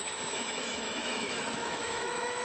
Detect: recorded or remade remade